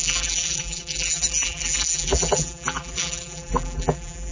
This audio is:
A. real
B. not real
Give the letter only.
B